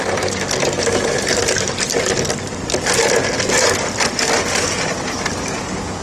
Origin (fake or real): real